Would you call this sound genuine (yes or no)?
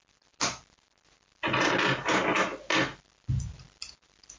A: yes